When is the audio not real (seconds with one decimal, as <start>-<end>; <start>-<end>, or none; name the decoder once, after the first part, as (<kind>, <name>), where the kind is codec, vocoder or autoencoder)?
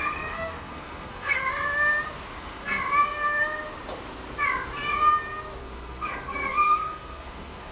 0.0-1.4 (codec, SNAC); 2.4-2.8; 5.6-7.7